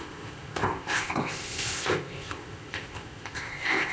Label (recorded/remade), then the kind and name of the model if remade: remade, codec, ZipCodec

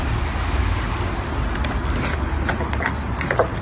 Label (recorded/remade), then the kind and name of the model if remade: recorded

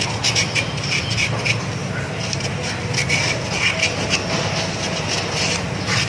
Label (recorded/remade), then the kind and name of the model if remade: recorded